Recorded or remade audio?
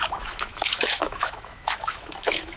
remade